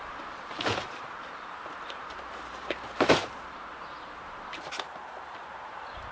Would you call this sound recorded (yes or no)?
no